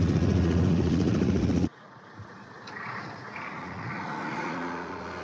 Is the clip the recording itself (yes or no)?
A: no